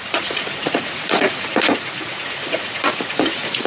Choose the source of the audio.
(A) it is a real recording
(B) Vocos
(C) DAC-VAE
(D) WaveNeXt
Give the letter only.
B